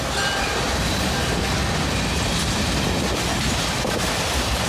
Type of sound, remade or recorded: recorded